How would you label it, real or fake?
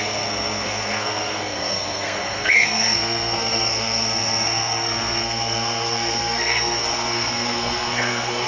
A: fake